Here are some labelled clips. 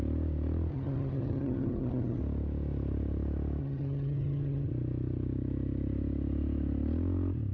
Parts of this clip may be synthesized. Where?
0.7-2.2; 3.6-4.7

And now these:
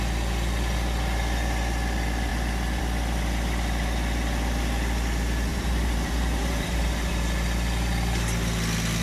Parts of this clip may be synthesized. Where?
5.5-7.1

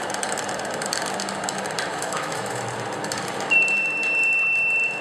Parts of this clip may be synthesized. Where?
1.9-2.6

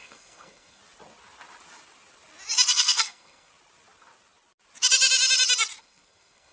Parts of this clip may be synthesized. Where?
0.0-0.8; 2.7-3.5; 5.8-6.5

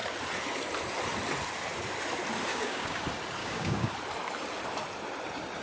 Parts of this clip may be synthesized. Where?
2.5-3.0; 3.4-3.9

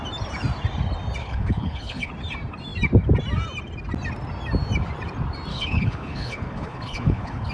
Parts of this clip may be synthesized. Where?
1.2-2.1; 5.5-7.5

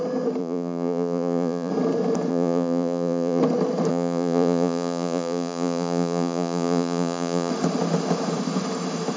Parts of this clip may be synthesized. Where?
0.4-1.7; 2.3-3.4; 3.9-7.5